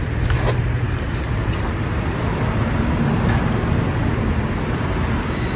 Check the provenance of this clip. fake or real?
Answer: real